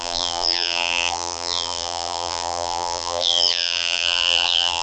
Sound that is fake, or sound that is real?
fake